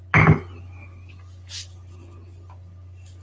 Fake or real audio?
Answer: real